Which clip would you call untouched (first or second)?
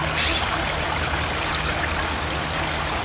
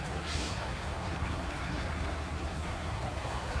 first